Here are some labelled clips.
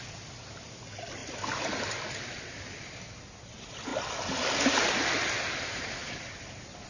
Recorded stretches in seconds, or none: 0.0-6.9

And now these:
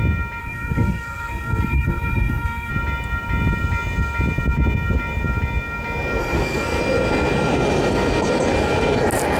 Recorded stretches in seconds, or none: 0.0-0.4; 2.7-6.2; 6.8-9.4

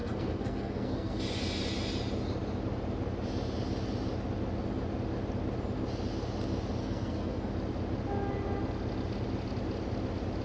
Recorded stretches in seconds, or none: 1.2-6.8; 7.5-10.4

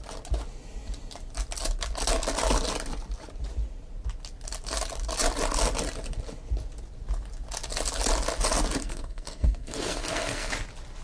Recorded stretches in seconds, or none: 0.0-8.8; 10.5-11.0